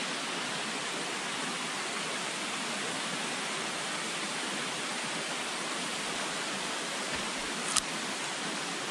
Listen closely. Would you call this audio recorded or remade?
remade